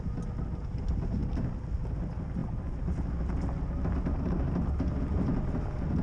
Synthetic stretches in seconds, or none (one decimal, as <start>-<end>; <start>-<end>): none